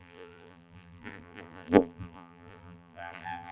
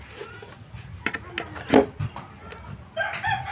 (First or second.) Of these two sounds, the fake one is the first